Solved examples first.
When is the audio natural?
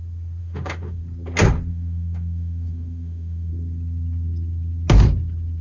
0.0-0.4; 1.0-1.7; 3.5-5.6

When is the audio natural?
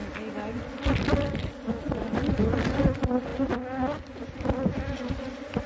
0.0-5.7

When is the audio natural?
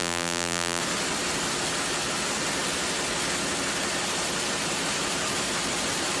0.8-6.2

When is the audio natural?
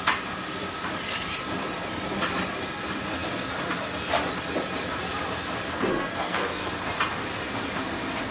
0.0-5.9; 6.7-8.3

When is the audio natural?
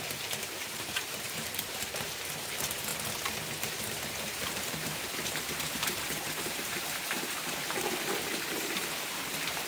2.9-3.8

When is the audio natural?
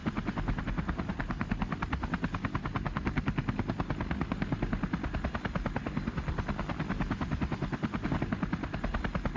0.0-9.4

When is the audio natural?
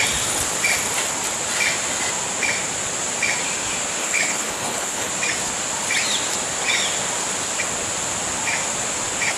0.0-4.0; 5.1-9.4